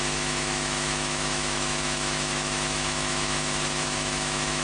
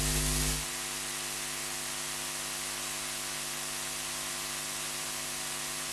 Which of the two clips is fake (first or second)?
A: first